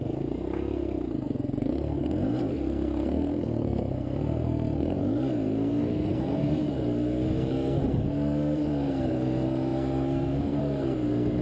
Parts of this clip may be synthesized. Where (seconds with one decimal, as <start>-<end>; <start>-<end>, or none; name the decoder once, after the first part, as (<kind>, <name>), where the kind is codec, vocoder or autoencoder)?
0.0-11.4 (codec, SNAC)